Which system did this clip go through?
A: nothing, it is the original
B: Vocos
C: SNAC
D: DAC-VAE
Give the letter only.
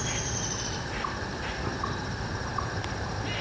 A